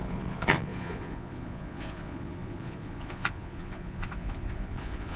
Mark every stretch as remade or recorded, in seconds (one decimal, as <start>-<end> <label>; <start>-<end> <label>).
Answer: 0.0-5.2 remade